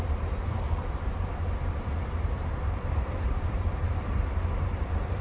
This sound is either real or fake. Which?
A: fake